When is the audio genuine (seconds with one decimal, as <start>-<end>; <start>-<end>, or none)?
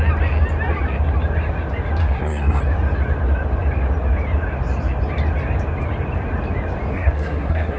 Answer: 0.0-2.0; 2.6-6.9